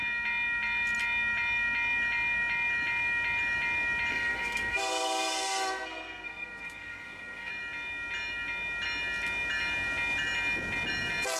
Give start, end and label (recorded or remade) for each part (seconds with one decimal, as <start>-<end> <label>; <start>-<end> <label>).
0.0-4.1 recorded; 4.1-7.5 remade; 7.5-11.4 recorded